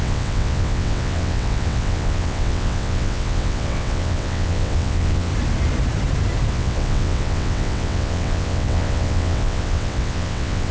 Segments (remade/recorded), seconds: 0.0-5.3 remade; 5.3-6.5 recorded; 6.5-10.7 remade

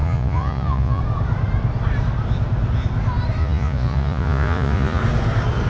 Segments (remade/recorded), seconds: 0.0-1.0 remade; 1.0-3.4 recorded; 3.4-5.0 remade; 5.0-5.7 recorded